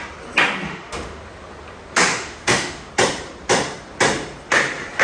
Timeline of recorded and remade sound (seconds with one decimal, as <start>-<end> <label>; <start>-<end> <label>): 0.0-0.7 recorded; 0.7-1.2 remade; 1.2-2.1 recorded; 2.1-2.9 remade; 2.9-5.0 recorded